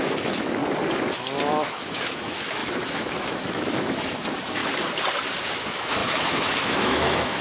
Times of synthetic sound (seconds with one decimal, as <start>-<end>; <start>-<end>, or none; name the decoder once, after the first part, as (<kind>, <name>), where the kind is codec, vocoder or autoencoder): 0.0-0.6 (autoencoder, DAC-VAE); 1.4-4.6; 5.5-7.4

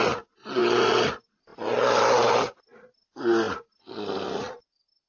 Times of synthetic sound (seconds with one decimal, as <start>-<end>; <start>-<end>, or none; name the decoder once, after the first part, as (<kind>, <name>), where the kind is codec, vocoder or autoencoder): none

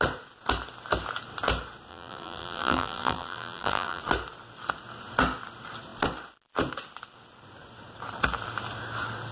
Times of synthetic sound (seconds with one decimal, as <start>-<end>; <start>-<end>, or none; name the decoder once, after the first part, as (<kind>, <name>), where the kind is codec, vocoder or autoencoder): 1.9-4.0 (vocoder, BigVGAN v2)

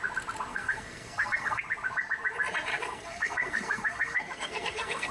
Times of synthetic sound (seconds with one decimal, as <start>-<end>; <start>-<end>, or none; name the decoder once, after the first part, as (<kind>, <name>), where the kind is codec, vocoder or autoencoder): 0.5-1.6 (codec, SNAC); 2.7-5.1

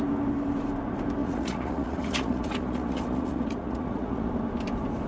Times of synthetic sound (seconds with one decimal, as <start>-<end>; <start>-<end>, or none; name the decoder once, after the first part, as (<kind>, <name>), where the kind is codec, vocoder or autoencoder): 1.2-4.3 (vocoder, Vocos)